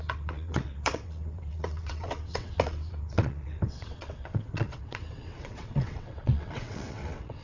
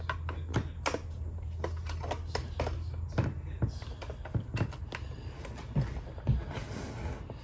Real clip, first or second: second